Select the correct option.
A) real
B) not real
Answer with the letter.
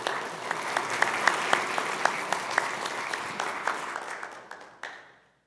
A